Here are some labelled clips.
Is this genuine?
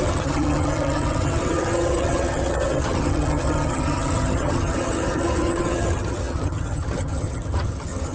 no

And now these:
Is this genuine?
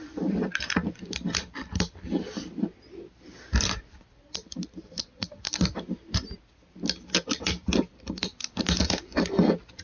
no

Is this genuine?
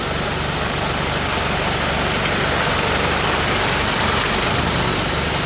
yes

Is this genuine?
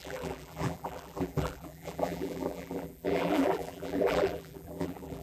no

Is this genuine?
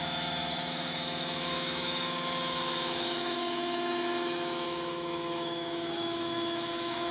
no